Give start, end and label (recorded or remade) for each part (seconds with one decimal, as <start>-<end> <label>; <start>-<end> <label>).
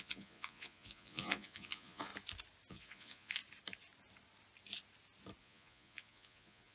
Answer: 0.0-2.1 remade; 2.1-2.7 recorded; 2.7-3.4 remade; 3.4-5.4 recorded; 5.4-6.7 remade